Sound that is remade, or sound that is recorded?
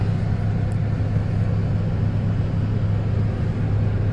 recorded